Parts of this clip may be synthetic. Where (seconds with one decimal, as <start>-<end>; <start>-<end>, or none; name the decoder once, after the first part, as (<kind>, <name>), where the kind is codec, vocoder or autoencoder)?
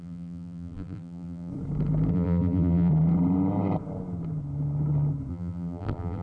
0.0-1.5 (vocoder, BigVGAN v2); 2.1-2.9; 5.3-6.2